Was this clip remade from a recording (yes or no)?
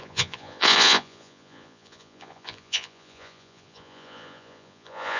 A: yes